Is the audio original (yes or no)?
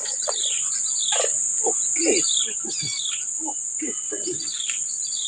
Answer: yes